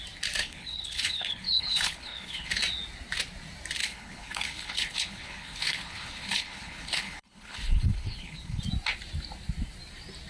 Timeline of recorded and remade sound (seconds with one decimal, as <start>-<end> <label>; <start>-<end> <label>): 0.0-0.4 recorded; 0.4-2.6 remade; 2.6-3.8 recorded; 3.8-8.6 remade; 8.6-10.3 recorded